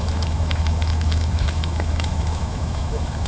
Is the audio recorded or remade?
remade